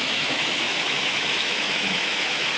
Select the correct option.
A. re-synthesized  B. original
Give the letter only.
A